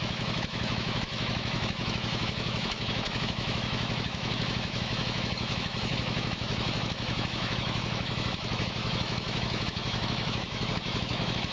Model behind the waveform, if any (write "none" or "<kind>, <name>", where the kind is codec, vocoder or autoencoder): autoencoder, DAC-VAE